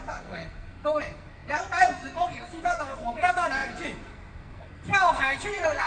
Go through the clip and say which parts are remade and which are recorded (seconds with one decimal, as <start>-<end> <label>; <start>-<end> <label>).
0.0-5.9 remade